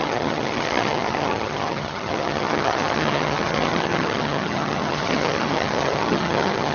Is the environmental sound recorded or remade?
remade